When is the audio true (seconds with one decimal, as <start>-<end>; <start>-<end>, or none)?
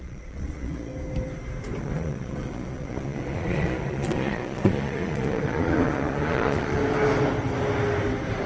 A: 0.9-1.8; 6.8-8.5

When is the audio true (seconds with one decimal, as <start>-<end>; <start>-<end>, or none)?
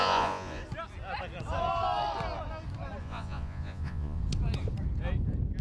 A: 0.6-3.0; 4.2-5.6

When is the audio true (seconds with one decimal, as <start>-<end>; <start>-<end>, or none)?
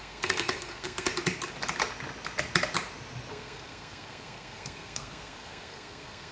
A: 1.1-3.3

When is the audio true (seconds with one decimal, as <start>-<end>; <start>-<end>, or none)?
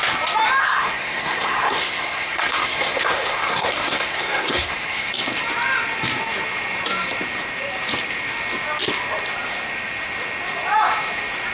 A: 0.0-0.6; 5.1-11.5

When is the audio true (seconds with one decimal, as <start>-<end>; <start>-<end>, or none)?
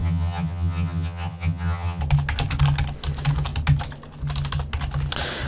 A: 2.0-5.5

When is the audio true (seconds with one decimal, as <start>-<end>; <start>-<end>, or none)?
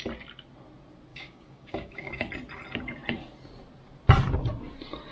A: 0.0-1.1; 2.3-5.1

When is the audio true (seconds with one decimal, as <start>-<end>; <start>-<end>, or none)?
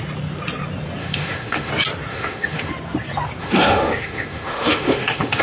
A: 0.0-1.0; 1.7-2.1; 2.7-3.4